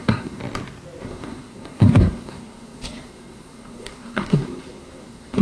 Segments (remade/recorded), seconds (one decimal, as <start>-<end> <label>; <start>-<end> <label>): 0.0-0.4 remade; 0.4-1.0 recorded; 1.0-5.4 remade